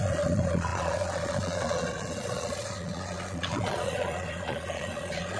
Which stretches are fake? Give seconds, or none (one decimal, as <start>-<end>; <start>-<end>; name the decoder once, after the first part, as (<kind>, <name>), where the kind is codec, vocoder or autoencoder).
0.0-5.4 (vocoder, Vocos)